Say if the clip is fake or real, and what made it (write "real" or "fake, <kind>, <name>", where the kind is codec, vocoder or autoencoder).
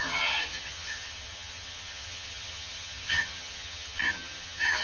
fake, vocoder, HiFi-GAN